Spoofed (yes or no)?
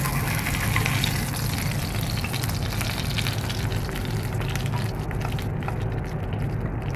no